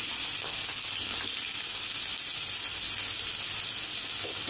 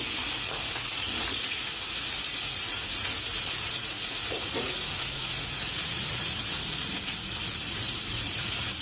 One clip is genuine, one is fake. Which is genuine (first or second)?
first